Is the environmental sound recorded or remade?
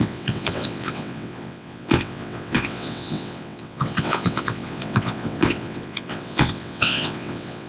remade